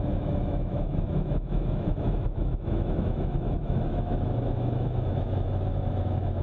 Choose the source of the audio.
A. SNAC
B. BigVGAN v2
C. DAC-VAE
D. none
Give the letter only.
C